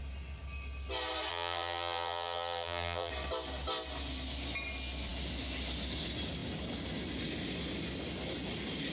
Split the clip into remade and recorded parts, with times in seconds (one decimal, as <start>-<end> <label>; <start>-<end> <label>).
0.0-1.3 recorded; 1.3-3.1 remade; 3.1-8.9 recorded